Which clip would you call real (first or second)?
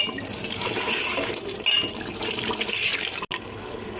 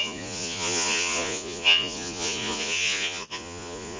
first